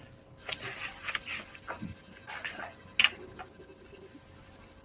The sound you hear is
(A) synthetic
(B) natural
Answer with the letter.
B